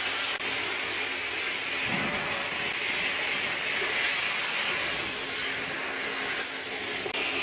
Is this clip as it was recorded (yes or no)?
yes